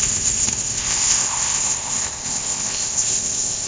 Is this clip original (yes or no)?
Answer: no